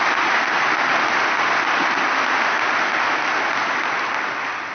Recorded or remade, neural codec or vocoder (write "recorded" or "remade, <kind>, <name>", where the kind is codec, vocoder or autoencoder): recorded